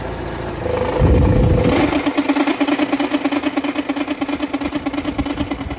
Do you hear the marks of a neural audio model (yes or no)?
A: no